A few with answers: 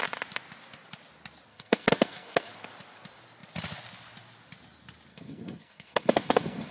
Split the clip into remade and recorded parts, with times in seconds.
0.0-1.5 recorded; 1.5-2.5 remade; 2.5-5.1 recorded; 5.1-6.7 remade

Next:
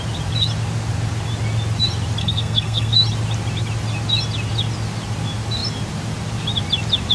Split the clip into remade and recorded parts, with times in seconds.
0.0-2.2 recorded; 2.2-2.9 remade; 2.9-7.1 recorded